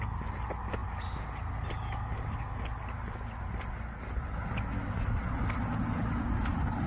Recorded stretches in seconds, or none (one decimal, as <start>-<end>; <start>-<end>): 0.0-6.9

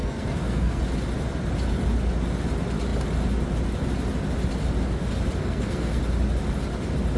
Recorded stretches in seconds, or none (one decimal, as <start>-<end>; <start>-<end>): 0.8-5.4; 6.0-7.2

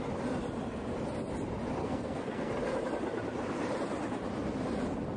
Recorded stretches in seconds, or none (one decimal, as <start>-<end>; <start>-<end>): 0.0-1.8; 2.5-5.2

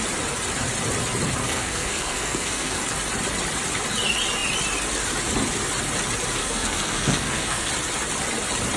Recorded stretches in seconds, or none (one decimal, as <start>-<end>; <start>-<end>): 0.0-1.4; 2.8-6.4; 7.7-8.8